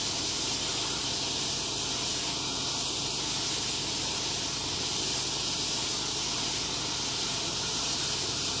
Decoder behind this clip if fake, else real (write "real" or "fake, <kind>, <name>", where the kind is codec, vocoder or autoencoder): real